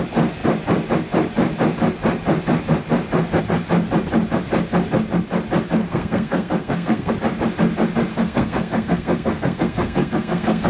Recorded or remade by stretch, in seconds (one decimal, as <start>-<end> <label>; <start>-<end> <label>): 0.0-5.8 recorded; 5.8-7.1 remade; 7.1-8.1 recorded; 8.1-10.7 remade